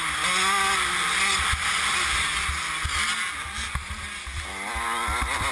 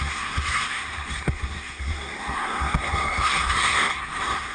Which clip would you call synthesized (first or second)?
second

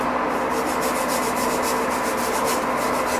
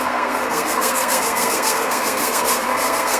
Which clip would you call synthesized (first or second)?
second